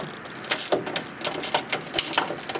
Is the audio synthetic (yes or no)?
no